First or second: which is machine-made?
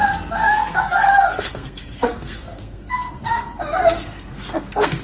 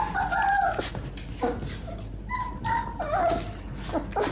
first